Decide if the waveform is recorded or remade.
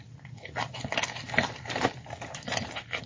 recorded